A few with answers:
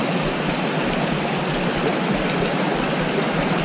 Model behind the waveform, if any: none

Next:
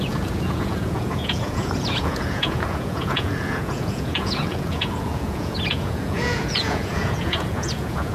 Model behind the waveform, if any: vocoder, Vocos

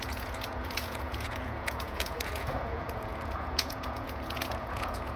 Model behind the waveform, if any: vocoder, Vocos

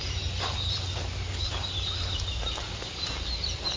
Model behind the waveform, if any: none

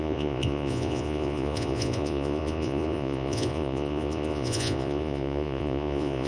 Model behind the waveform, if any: vocoder, Vocos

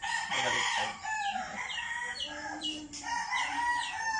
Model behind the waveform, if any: none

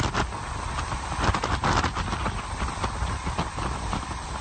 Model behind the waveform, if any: none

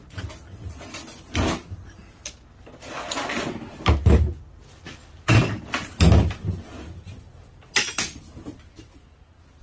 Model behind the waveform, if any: none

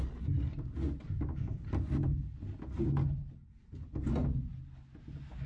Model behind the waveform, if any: none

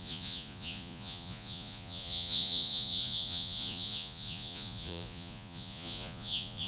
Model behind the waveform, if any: vocoder, Vocos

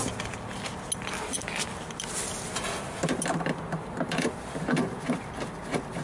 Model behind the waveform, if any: none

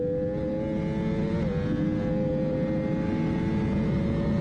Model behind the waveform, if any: none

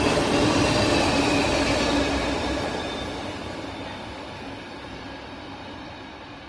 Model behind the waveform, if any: none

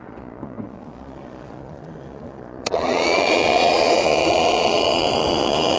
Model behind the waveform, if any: vocoder, Vocos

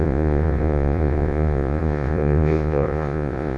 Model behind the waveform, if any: vocoder, Vocos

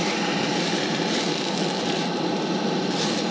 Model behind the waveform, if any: none